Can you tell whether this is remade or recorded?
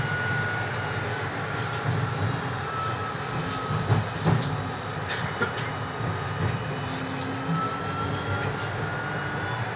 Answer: recorded